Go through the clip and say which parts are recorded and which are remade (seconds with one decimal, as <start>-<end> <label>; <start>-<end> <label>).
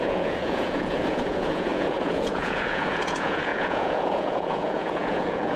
0.0-5.6 remade